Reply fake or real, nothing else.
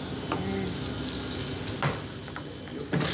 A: real